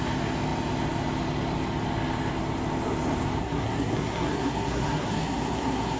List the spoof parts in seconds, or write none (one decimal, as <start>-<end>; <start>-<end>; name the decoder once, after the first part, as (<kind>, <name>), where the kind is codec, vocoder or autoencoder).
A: 3.4-6.0 (codec, SNAC)